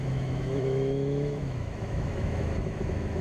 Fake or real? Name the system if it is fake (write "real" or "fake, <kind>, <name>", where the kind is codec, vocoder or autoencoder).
fake, autoencoder, DAC-VAE